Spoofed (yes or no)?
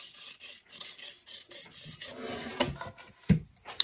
no